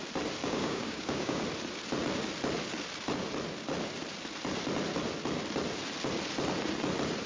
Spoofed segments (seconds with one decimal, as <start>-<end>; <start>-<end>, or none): 0.4-1.4